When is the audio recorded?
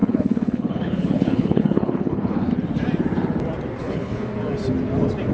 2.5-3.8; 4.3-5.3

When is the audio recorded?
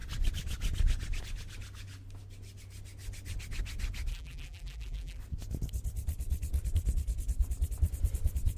0.0-4.1; 5.2-8.6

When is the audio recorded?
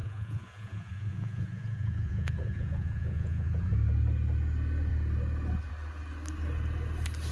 3.7-7.3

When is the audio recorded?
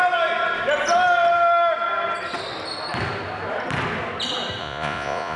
0.0-4.6